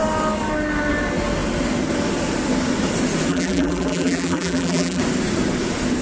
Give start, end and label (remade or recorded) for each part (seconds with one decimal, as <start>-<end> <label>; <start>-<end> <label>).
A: 0.0-3.3 recorded; 3.3-5.0 remade; 5.0-6.0 recorded